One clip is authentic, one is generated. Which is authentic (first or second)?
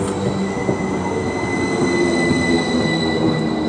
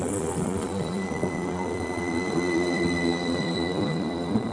first